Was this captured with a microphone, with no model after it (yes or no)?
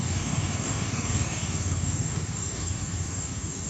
no